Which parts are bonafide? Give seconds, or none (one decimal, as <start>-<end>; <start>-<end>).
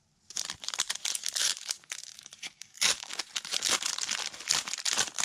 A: 0.0-1.4; 3.2-5.2